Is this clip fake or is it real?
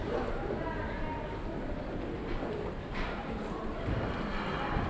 real